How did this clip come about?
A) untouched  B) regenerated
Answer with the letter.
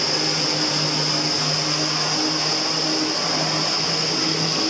A